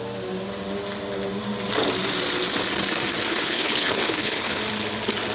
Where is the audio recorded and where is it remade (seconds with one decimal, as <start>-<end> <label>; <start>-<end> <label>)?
0.0-3.3 recorded; 3.3-4.6 remade; 4.6-5.3 recorded